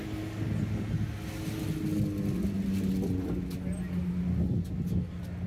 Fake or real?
real